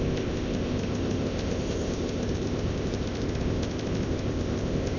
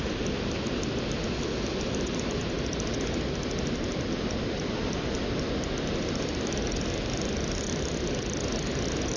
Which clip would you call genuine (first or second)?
second